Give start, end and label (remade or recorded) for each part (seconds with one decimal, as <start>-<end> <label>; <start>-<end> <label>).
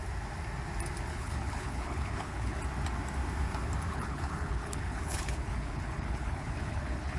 0.0-1.1 recorded; 1.1-2.6 remade; 2.6-3.9 recorded; 3.9-7.2 remade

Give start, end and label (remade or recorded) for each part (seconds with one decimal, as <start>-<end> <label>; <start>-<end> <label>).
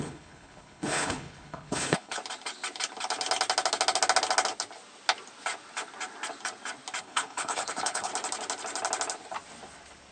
0.0-2.2 remade; 2.2-7.0 recorded; 7.0-8.1 remade; 8.1-10.1 recorded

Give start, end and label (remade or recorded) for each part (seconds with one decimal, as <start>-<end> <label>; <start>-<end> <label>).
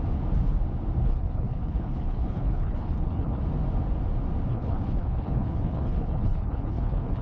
0.0-1.0 recorded; 1.0-3.4 remade; 3.4-4.5 recorded; 4.5-7.2 remade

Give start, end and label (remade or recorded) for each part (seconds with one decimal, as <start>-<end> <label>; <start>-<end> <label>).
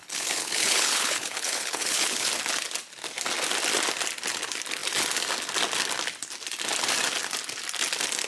0.0-2.3 remade; 2.3-8.3 recorded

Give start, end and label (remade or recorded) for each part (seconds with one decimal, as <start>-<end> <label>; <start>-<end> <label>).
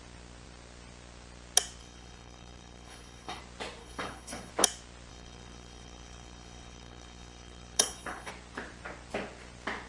0.0-1.8 recorded; 1.8-3.4 remade; 3.4-3.8 recorded; 3.8-4.5 remade; 4.5-5.1 recorded; 5.1-8.3 remade; 8.3-9.9 recorded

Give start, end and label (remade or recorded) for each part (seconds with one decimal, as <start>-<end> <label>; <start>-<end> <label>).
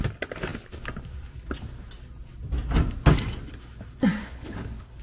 0.0-4.2 recorded; 4.2-5.0 remade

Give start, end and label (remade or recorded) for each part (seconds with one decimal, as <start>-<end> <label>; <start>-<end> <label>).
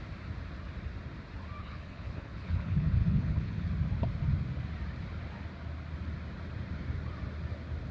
0.0-1.6 recorded; 1.6-3.7 remade; 3.7-7.9 recorded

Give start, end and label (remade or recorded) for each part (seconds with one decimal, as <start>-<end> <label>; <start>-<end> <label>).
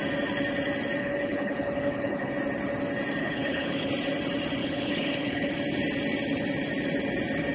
0.0-1.0 recorded; 1.0-2.3 remade; 2.3-3.2 recorded; 3.2-3.9 remade; 3.9-4.6 recorded; 4.6-5.5 remade; 5.5-7.5 recorded